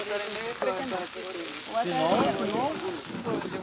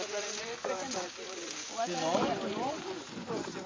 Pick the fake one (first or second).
second